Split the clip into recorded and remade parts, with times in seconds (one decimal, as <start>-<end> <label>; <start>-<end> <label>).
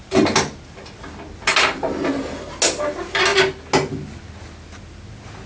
0.0-5.5 recorded